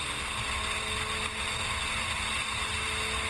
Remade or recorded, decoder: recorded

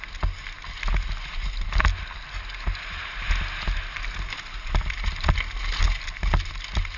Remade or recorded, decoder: recorded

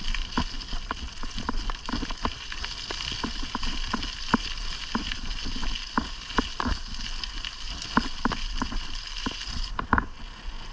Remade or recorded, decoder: recorded